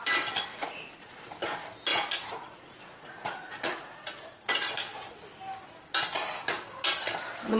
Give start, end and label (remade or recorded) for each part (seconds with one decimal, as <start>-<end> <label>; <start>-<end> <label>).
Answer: 0.0-0.5 recorded; 0.5-1.3 remade; 1.3-1.9 recorded; 1.9-4.5 remade; 4.5-7.6 recorded

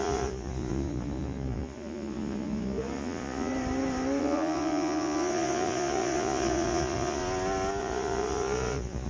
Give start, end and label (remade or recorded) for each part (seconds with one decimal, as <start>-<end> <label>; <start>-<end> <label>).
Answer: 0.0-3.5 remade; 3.5-4.2 recorded; 4.2-7.2 remade; 7.2-7.8 recorded; 7.8-9.1 remade

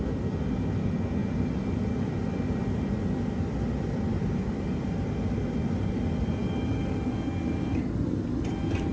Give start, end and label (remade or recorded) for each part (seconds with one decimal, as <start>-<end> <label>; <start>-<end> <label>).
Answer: 0.0-8.9 recorded

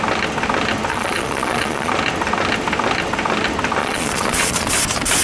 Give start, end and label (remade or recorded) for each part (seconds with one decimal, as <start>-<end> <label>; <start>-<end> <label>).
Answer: 0.0-0.9 recorded; 0.9-1.9 remade; 1.9-3.8 recorded; 3.8-4.7 remade; 4.7-5.2 recorded

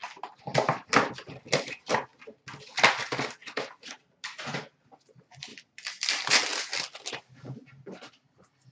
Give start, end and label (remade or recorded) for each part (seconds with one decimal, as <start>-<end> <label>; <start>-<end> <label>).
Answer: 0.0-8.7 recorded

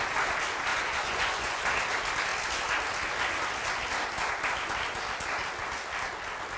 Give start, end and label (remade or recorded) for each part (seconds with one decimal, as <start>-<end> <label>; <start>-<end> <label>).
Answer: 0.0-0.7 recorded; 0.7-1.6 remade; 1.6-6.6 recorded